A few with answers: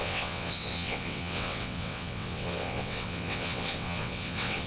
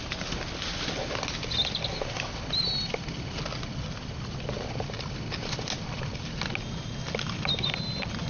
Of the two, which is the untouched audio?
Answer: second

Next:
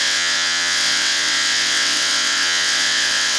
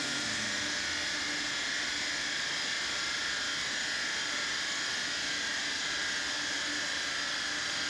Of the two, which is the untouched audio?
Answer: second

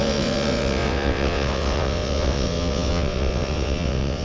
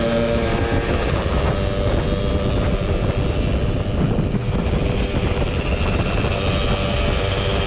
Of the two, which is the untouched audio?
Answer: second